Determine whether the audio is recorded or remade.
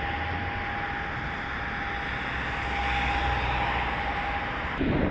recorded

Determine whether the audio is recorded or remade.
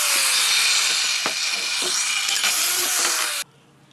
recorded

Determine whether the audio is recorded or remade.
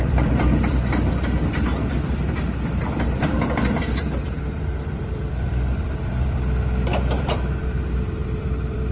remade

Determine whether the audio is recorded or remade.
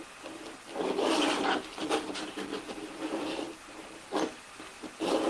recorded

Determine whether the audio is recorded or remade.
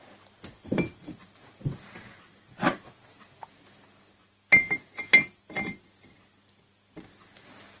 recorded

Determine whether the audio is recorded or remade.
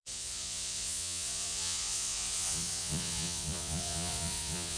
remade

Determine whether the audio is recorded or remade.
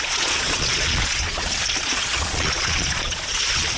remade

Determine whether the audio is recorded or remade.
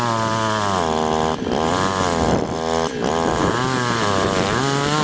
recorded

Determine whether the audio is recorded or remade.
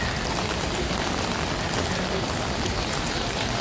recorded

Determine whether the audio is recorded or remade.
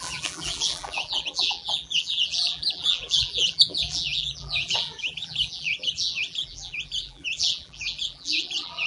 remade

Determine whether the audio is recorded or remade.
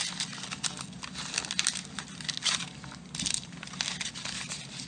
recorded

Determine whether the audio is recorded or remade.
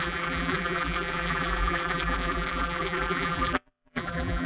remade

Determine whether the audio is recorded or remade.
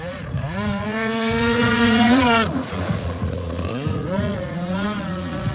remade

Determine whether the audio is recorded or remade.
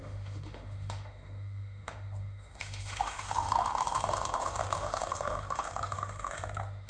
remade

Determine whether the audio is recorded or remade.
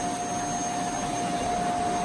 recorded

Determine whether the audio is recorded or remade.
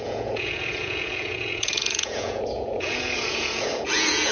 remade